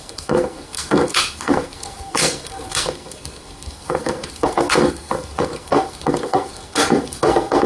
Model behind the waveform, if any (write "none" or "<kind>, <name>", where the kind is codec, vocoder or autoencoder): codec, SNAC